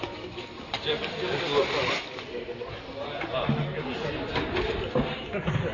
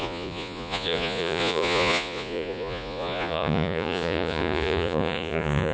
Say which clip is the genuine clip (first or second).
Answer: first